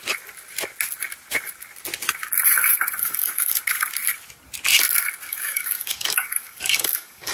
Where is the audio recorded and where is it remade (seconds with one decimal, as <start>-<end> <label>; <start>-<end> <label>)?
0.0-3.0 recorded; 3.0-3.5 remade; 3.5-5.3 recorded; 5.3-7.3 remade